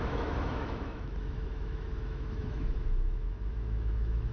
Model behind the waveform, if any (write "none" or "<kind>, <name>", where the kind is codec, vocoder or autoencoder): autoencoder, DAC-VAE